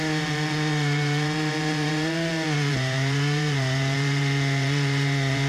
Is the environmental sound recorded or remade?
remade